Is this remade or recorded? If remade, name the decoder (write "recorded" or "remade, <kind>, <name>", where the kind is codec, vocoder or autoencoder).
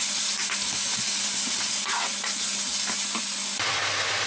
recorded